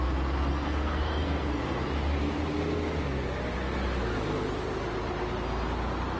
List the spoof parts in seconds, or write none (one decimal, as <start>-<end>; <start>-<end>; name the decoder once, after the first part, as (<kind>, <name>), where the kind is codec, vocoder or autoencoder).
0.5-1.6 (codec, SNAC)